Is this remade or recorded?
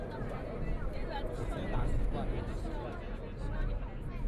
recorded